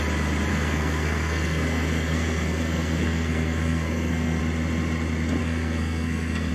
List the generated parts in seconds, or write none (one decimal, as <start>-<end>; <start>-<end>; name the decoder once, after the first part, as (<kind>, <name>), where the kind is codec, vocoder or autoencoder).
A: 0.5-4.4 (codec, SNAC); 5.4-6.5